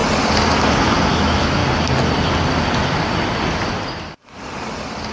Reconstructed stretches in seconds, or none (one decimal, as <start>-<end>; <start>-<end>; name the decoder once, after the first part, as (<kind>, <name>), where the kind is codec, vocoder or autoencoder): 1.1-1.6 (autoencoder, DAC-VAE)